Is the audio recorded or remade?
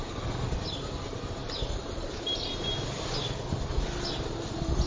recorded